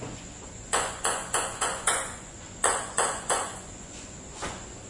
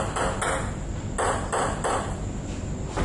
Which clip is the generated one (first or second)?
first